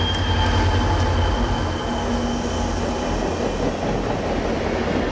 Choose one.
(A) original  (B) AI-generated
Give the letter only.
A